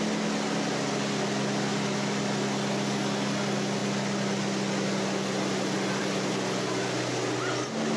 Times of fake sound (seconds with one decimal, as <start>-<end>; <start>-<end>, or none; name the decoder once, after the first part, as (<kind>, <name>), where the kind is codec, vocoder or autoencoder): none